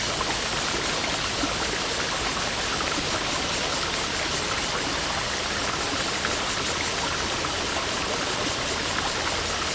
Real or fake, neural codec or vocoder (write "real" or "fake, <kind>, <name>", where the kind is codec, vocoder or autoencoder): real